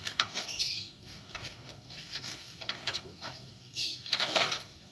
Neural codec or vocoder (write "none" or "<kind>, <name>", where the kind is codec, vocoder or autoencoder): codec, DAC